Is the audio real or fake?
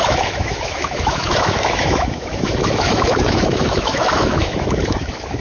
fake